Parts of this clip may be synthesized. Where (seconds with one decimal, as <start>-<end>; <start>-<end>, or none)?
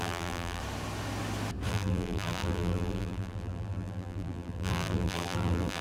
0.0-0.6; 1.7-5.8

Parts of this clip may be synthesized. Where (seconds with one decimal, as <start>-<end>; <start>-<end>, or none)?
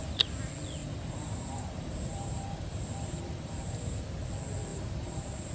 0.8-4.0; 4.7-5.5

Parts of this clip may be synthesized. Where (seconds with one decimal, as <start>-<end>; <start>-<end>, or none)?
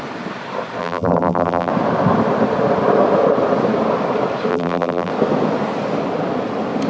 0.8-1.7; 4.5-5.1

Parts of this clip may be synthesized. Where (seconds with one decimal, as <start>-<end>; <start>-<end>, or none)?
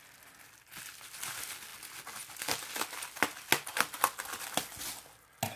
none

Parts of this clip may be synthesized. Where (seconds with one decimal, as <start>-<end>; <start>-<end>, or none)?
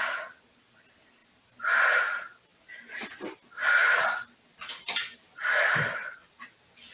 2.5-6.4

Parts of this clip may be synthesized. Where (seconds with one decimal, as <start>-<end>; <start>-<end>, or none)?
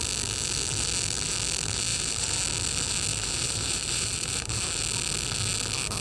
1.9-2.4; 3.1-4.8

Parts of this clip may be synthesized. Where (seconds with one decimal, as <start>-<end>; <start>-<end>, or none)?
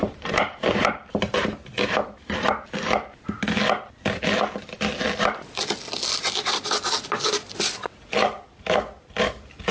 none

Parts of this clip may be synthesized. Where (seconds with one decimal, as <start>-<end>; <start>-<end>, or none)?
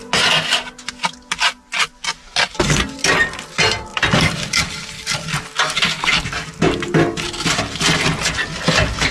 3.9-4.8